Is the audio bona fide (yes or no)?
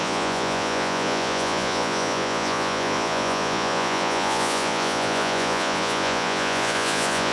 no